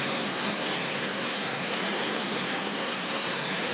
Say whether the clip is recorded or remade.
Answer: remade